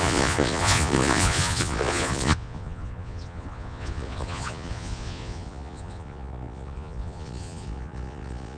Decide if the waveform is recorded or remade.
remade